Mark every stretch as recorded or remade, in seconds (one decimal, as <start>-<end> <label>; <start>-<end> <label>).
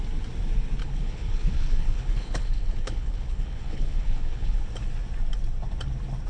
0.0-0.8 recorded; 0.8-4.6 remade; 4.6-6.3 recorded